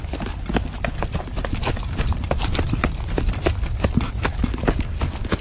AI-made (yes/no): no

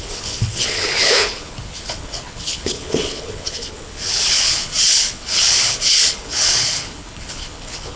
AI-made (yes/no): yes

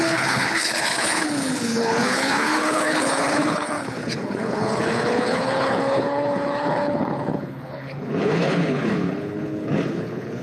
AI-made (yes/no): yes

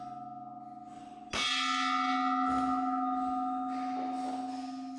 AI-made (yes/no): no